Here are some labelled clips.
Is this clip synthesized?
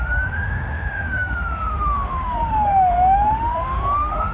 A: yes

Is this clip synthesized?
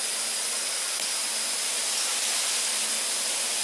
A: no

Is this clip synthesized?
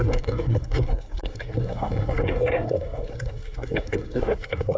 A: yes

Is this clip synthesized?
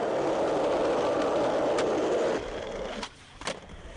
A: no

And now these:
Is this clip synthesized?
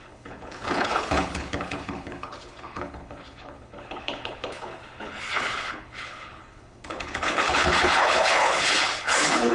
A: yes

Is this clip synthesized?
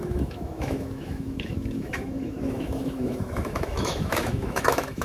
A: yes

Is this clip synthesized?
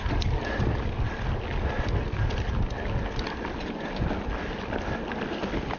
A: no